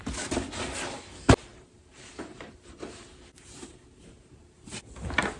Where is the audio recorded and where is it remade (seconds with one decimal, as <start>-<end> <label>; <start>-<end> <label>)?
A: 0.0-1.5 recorded; 1.5-4.7 remade; 4.7-5.4 recorded